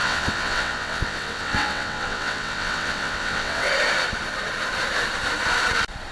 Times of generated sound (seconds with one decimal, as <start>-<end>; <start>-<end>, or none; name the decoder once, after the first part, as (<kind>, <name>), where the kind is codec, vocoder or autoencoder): 0.0-3.7 (vocoder, WaveNeXt)